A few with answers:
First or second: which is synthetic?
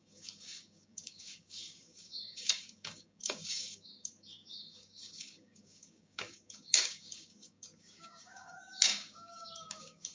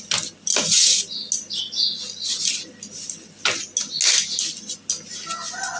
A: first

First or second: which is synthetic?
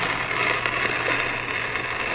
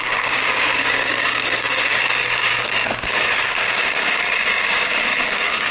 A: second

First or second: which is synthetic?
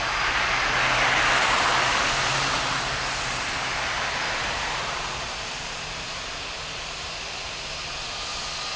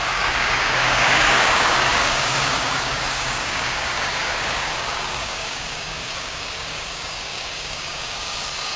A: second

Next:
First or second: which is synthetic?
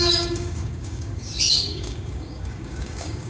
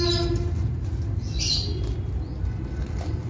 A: first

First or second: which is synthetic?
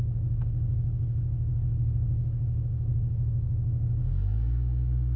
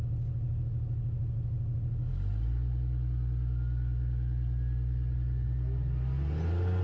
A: first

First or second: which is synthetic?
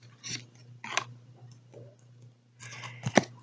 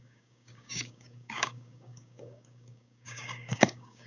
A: second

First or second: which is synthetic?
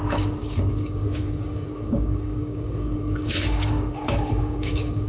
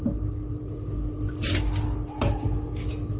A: first